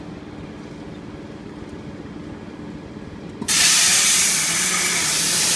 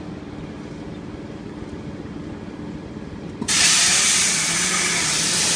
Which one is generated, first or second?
second